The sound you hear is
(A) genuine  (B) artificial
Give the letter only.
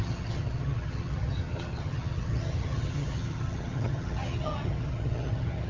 B